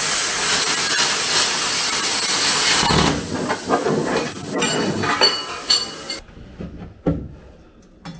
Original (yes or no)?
yes